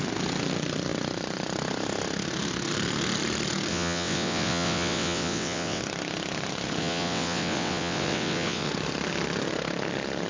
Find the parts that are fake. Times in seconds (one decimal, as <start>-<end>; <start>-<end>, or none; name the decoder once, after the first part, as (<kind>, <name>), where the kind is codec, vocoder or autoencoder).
3.7-5.8 (vocoder, WaveNeXt); 6.8-8.7